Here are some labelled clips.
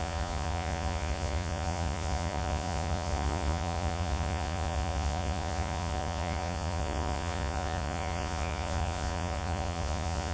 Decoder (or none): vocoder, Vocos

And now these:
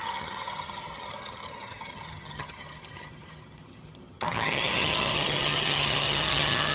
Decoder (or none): vocoder, HiFi-GAN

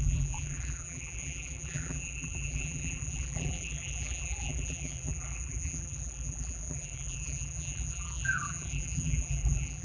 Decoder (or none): vocoder, BigVGAN v2